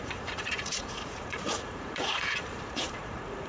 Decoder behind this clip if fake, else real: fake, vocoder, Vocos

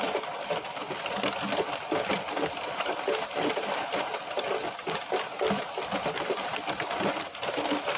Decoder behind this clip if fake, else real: real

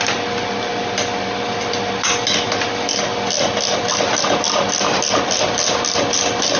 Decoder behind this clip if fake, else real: real